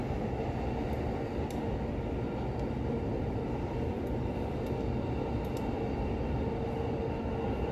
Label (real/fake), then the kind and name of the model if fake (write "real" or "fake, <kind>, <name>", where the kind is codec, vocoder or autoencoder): real